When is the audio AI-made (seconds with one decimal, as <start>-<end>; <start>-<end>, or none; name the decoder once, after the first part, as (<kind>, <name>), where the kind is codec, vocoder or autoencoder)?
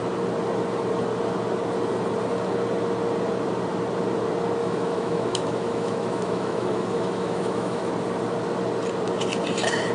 4.6-7.9 (autoencoder, DAC-VAE)